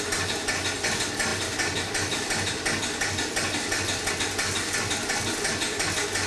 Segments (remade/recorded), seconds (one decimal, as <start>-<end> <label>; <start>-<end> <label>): 0.0-6.3 recorded